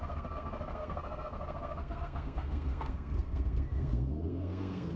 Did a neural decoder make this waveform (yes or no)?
yes